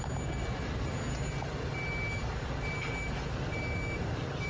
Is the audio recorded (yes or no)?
yes